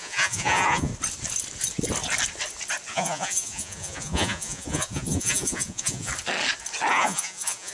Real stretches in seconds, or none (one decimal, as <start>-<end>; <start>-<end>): 0.9-2.9; 6.1-6.9